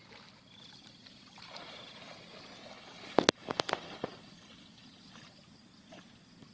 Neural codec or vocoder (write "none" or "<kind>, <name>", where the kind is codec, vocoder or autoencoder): none